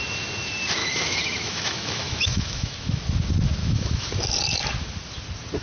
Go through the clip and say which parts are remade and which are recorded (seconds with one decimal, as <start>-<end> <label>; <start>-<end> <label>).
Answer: 0.0-0.8 recorded; 0.8-3.0 remade; 3.0-3.6 recorded; 3.6-4.1 remade; 4.1-5.6 recorded